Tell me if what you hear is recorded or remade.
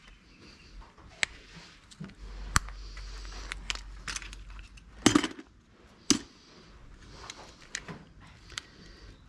recorded